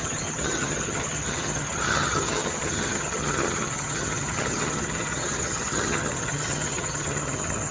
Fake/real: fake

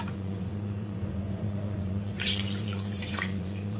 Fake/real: fake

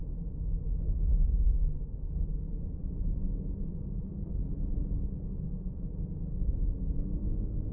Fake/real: real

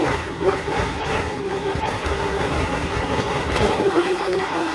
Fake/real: fake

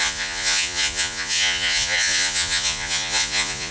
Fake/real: fake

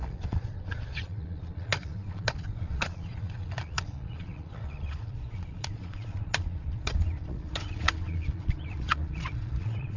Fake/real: fake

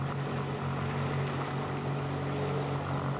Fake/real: real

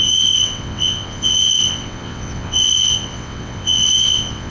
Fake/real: fake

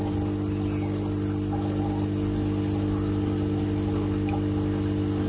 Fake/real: real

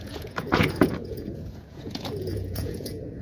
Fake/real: fake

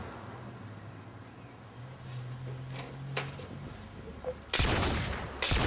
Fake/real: real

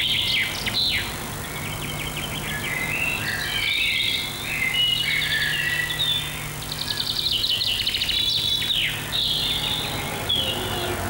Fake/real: real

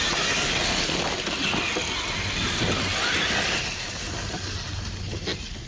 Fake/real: real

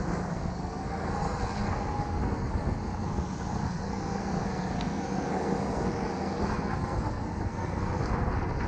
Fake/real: fake